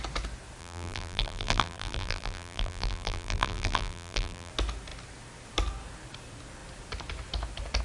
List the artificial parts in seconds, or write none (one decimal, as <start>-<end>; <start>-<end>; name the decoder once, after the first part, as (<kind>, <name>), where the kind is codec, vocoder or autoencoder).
0.6-4.5 (vocoder, BigVGAN v2)